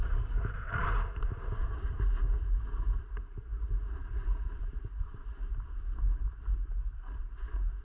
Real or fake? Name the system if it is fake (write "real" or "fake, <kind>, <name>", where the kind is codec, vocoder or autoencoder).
fake, vocoder, BigVGAN v2